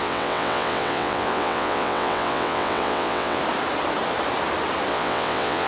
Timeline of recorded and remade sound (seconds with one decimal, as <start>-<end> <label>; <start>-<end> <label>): 0.0-3.4 remade; 3.4-4.9 recorded; 4.9-5.7 remade